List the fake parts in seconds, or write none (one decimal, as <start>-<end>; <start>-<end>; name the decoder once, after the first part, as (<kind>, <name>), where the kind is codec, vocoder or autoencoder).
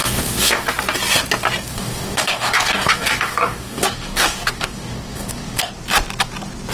0.0-0.7 (codec, DAC); 1.7-5.7